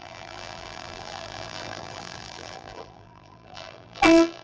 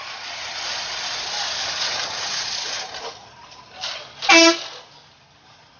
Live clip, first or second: second